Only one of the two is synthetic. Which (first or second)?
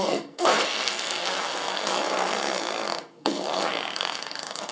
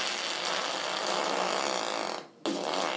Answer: first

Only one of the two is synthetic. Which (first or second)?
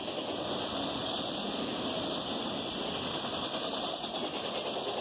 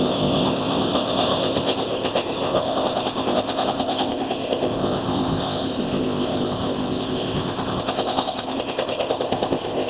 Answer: second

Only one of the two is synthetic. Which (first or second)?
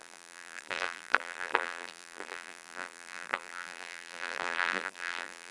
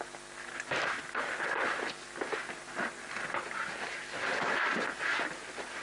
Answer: first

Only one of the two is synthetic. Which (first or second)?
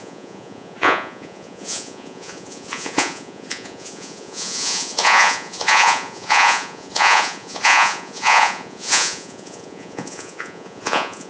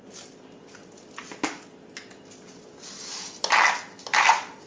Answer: first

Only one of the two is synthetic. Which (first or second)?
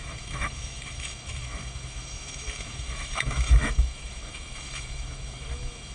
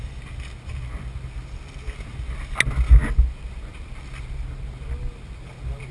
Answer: first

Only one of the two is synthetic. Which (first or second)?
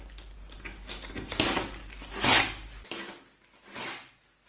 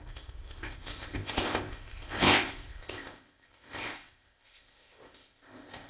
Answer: second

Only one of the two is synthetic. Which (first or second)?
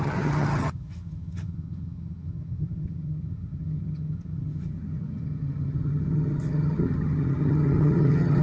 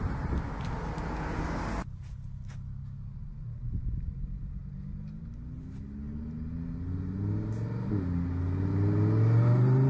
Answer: first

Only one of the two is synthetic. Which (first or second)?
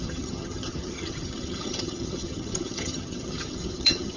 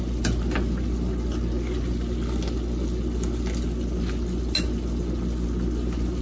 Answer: first